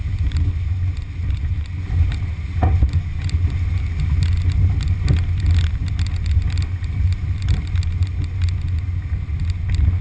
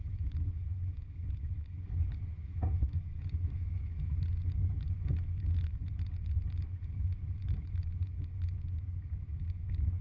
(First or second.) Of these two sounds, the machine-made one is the second